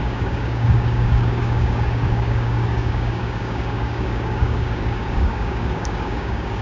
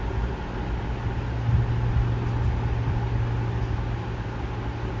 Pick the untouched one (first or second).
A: second